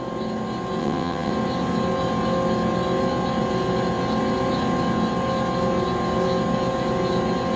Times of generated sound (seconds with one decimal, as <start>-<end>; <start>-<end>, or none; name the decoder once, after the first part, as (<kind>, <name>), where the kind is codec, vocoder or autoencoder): 0.8-1.3 (vocoder, WaveNeXt)